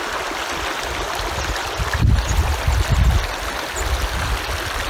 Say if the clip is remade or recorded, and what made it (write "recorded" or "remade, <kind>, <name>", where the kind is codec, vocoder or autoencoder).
recorded